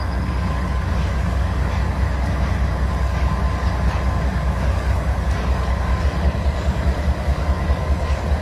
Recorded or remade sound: remade